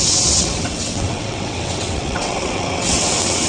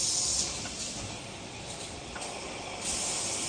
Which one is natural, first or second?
second